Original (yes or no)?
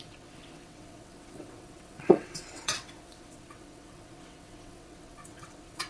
no